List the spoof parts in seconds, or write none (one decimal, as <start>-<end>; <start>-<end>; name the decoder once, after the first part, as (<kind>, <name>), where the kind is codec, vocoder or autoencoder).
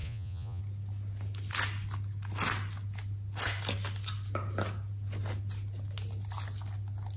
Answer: 0.0-0.6 (vocoder, Vocos)